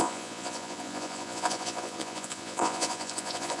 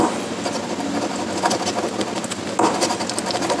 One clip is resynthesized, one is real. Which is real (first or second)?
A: second